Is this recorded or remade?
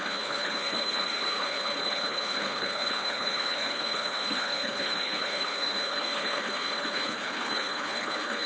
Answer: remade